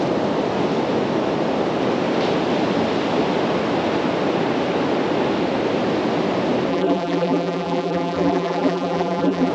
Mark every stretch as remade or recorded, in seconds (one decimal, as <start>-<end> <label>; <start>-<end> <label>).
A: 0.0-6.7 recorded; 6.7-9.5 remade